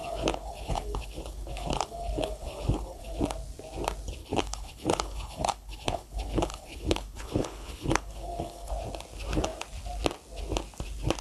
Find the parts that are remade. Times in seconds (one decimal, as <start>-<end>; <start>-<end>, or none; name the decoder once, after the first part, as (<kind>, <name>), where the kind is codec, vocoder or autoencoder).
0.0-3.2 (codec, HILCodec); 4.2-8.7